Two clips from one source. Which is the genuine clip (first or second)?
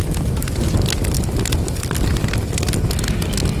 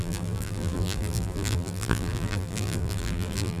first